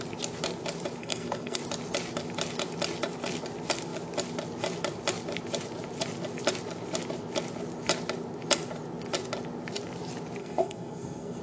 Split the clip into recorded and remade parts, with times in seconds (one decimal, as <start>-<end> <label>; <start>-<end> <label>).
0.0-1.0 recorded; 1.0-1.6 remade; 1.6-10.4 recorded; 10.4-11.4 remade